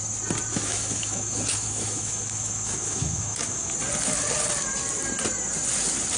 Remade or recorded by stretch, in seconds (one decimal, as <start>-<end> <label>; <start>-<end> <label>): 0.0-0.5 recorded; 0.5-3.7 remade; 3.7-6.2 recorded